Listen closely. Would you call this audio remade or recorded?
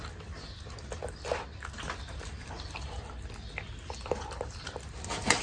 recorded